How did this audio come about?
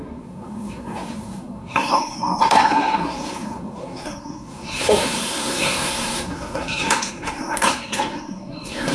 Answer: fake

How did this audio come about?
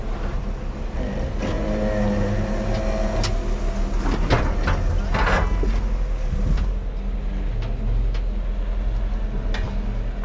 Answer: real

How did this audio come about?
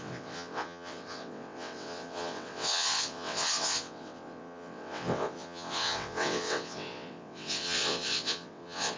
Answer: fake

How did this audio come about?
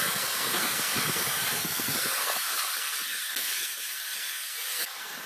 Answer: fake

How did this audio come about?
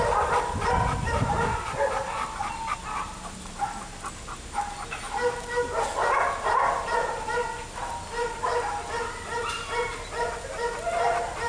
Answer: real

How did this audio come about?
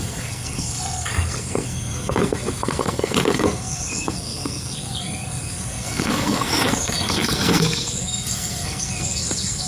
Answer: fake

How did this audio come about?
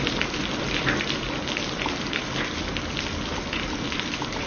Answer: real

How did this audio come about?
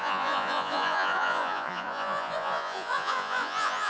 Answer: fake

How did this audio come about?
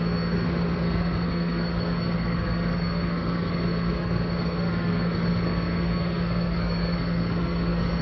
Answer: fake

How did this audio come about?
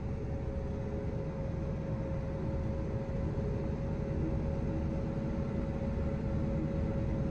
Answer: real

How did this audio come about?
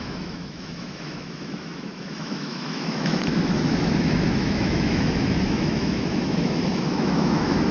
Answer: fake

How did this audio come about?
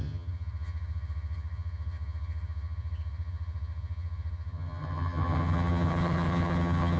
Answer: fake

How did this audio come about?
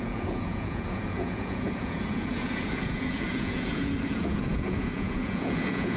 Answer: fake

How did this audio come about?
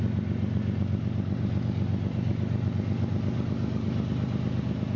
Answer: real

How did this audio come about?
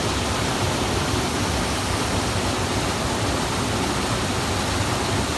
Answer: real